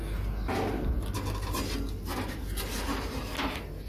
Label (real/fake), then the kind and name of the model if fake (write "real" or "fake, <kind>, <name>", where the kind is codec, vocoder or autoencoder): real